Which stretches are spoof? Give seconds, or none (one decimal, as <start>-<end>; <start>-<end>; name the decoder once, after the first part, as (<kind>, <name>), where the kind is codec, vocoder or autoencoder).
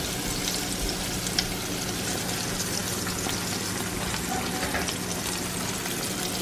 none